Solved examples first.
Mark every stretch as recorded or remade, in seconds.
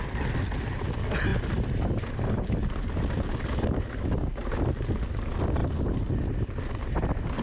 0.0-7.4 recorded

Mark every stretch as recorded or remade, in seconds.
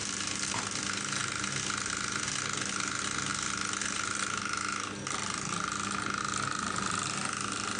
0.0-0.5 remade; 0.5-7.8 recorded